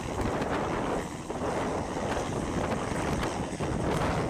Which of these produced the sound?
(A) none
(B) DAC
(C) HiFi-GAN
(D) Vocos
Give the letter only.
A